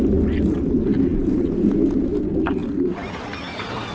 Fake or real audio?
real